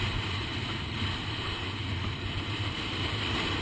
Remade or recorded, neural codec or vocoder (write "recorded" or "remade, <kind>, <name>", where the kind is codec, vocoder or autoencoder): recorded